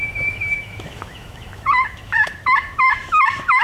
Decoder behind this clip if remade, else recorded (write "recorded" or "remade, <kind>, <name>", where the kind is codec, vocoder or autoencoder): remade, autoencoder, DAC-VAE